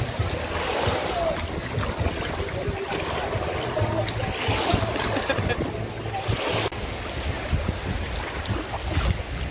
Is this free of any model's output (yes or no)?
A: yes